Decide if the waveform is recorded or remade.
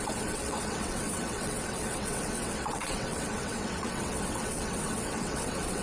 remade